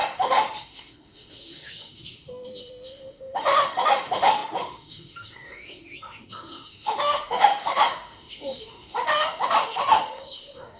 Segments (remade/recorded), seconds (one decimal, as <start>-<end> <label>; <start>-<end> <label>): 0.0-10.8 remade